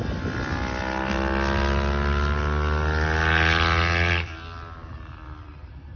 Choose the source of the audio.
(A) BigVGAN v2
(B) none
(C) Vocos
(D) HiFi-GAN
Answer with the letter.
B